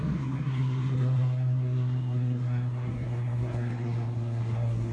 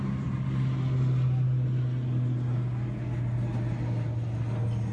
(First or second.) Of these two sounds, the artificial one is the first